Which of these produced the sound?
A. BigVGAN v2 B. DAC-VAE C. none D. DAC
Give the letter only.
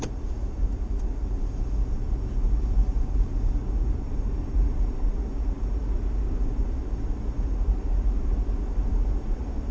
A